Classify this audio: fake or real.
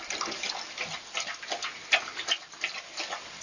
real